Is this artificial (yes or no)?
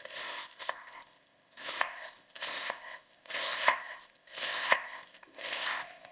yes